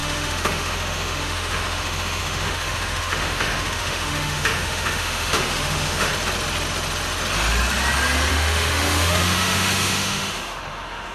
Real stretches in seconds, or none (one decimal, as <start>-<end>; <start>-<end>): 6.1-8.3